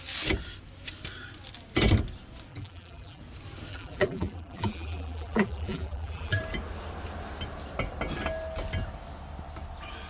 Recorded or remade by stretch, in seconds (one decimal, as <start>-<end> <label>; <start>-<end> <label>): 0.0-2.5 recorded; 2.5-3.2 remade; 3.2-3.7 recorded; 3.7-6.4 remade; 6.4-10.1 recorded